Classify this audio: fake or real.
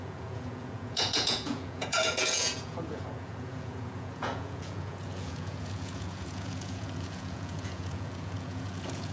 fake